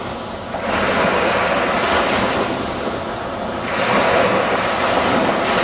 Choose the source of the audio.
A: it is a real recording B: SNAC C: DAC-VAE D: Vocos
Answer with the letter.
A